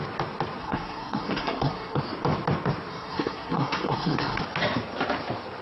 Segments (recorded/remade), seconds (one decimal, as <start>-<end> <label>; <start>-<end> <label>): 0.0-0.6 recorded; 0.6-2.0 remade; 2.0-2.9 recorded; 2.9-4.4 remade; 4.4-5.6 recorded